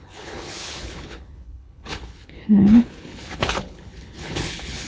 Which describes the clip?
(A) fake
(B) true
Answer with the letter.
A